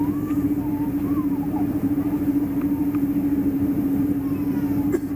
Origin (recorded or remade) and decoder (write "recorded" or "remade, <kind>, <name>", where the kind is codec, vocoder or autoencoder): remade, vocoder, BigVGAN v2